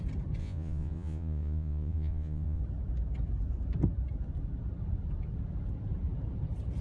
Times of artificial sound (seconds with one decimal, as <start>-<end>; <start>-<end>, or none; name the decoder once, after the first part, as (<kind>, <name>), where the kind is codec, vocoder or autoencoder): 0.4-2.6 (vocoder, Vocos)